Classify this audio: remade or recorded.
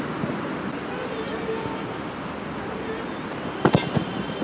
recorded